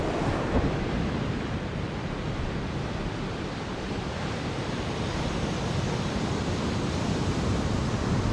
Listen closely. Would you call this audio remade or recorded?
recorded